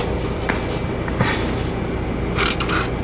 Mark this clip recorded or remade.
recorded